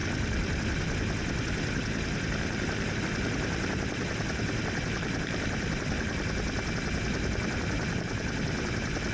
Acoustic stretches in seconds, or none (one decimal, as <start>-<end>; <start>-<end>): 0.0-9.1